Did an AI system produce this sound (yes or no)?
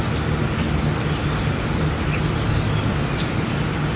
no